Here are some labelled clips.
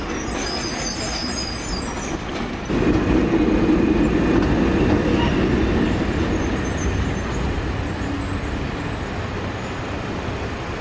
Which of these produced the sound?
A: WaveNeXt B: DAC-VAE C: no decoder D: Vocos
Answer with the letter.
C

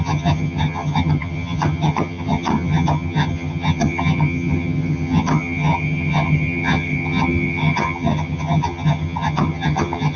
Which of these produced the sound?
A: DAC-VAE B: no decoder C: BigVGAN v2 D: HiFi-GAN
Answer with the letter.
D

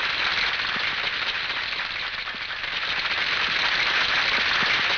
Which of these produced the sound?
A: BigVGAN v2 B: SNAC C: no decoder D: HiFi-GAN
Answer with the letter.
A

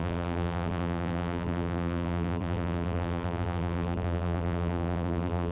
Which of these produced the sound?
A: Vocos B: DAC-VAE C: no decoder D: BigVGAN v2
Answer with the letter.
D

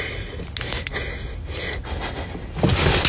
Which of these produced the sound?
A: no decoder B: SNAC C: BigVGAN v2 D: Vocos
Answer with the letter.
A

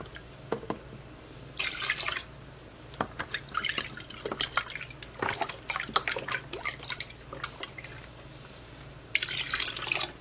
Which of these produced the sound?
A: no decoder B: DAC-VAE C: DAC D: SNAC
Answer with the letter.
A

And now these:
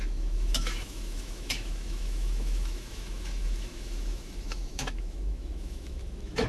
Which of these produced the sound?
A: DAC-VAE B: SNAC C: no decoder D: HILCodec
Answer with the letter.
A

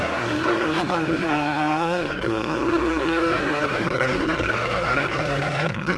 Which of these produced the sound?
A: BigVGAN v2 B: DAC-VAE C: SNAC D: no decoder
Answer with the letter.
C